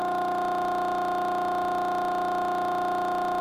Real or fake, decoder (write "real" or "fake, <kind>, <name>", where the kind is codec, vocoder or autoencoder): real